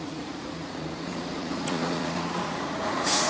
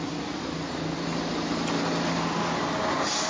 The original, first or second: second